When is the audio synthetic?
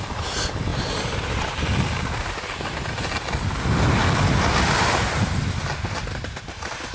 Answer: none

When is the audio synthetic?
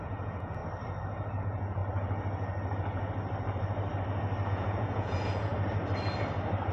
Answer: 0.0-0.6 (vocoder, Vocos); 1.4-1.8; 4.5-5.5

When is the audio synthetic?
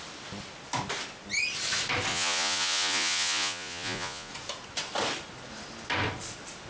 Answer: 2.1-4.3 (vocoder, Vocos)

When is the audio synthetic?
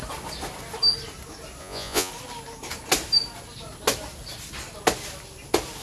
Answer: 1.6-2.1 (vocoder, Vocos)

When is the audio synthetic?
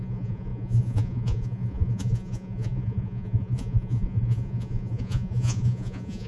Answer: 0.0-6.3 (vocoder, Vocos)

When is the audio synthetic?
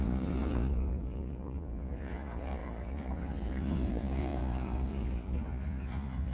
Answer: 0.0-6.3 (vocoder, Vocos)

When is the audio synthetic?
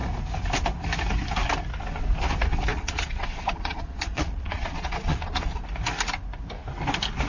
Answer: 2.7-5.6 (vocoder, Vocos)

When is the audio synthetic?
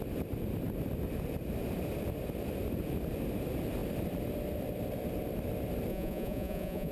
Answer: 5.9-6.9 (vocoder, Vocos)